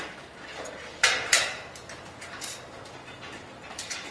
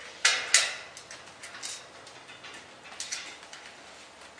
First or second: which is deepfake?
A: first